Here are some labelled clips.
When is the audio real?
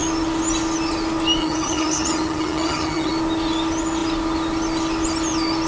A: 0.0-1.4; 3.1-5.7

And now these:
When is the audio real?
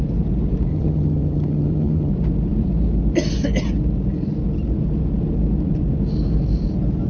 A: 0.0-0.7; 2.1-7.1